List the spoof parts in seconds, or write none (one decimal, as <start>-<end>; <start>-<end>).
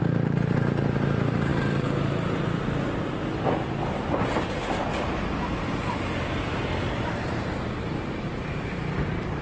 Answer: 5.4-8.2